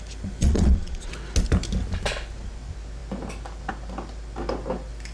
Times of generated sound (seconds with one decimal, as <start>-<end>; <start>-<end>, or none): 0.4-1.1